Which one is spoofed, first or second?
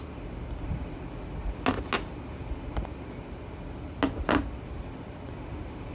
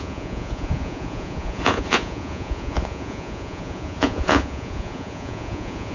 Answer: second